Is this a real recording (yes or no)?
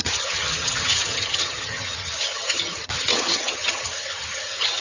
no